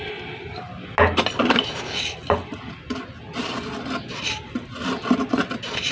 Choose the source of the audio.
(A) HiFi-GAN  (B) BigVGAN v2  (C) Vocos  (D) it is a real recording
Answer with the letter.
D